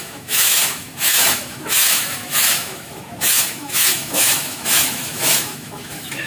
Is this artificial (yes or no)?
yes